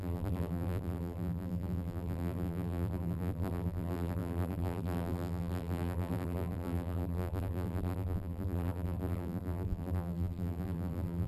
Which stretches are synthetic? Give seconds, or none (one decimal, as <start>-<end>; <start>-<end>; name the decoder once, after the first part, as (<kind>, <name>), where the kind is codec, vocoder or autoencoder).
0.0-11.3 (vocoder, BigVGAN v2)

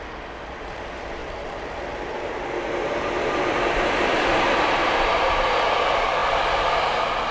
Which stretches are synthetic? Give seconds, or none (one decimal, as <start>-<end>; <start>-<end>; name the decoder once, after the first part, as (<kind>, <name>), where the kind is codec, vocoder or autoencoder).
1.2-5.6 (vocoder, BigVGAN v2)

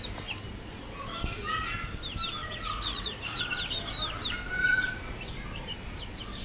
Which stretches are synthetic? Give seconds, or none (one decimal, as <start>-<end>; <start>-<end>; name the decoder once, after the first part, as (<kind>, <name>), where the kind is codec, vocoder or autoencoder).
2.4-3.4 (vocoder, Vocos); 4.6-5.3

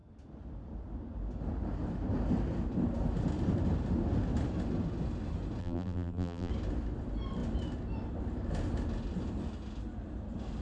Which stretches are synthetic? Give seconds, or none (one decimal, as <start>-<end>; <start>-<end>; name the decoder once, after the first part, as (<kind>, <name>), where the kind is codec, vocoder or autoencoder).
5.6-6.5 (vocoder, BigVGAN v2)

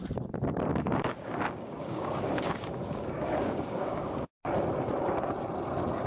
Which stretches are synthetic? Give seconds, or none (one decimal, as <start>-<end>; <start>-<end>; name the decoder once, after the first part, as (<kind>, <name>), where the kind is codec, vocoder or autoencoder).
0.7-4.4 (codec, DAC)

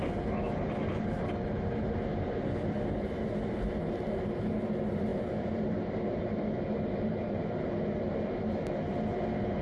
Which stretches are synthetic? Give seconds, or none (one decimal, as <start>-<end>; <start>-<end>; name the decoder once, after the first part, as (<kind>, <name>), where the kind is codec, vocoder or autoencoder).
none